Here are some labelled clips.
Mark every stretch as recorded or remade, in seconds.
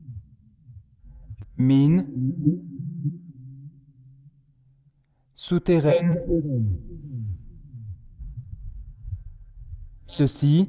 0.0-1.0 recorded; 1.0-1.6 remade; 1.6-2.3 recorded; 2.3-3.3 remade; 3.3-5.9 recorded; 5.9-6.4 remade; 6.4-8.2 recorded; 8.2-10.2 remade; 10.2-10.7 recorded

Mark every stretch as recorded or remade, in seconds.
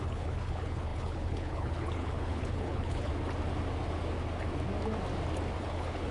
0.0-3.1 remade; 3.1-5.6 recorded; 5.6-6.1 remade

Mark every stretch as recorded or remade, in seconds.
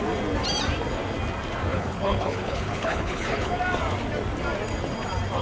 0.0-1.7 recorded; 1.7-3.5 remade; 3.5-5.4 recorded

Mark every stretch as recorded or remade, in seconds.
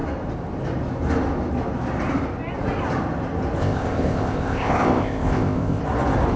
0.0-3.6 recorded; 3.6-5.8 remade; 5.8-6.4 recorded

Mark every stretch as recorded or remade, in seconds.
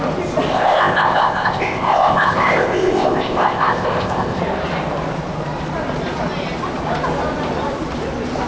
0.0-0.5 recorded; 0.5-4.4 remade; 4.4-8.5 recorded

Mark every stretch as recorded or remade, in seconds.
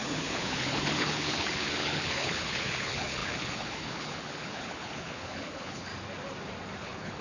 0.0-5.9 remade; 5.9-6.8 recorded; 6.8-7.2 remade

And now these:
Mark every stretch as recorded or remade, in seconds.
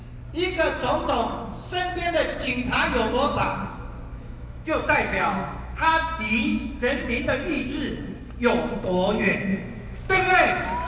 0.0-4.1 recorded; 4.1-7.2 remade; 7.2-9.5 recorded; 9.5-10.3 remade; 10.3-10.9 recorded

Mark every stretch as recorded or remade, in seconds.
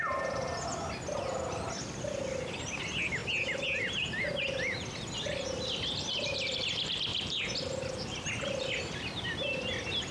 0.0-7.1 recorded; 7.1-8.8 remade; 8.8-10.1 recorded